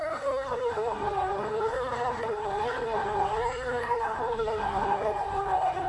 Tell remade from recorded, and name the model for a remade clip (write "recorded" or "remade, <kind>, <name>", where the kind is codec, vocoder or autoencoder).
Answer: remade, codec, SNAC